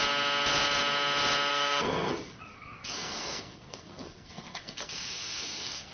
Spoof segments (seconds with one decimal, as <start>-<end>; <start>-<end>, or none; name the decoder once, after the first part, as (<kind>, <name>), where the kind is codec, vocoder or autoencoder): 1.5-2.1 (codec, SNAC); 2.5-5.9